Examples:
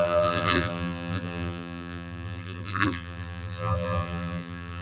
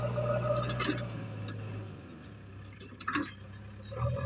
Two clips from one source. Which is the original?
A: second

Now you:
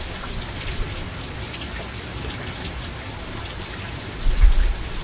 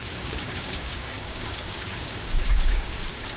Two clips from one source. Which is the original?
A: first